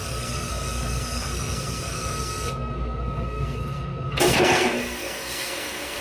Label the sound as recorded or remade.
remade